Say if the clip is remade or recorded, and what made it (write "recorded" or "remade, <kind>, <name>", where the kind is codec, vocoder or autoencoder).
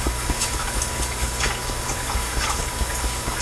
remade, codec, DAC